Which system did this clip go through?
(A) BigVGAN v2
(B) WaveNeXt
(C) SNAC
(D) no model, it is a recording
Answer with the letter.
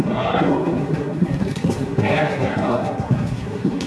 C